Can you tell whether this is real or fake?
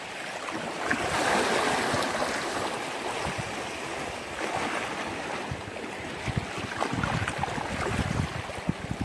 real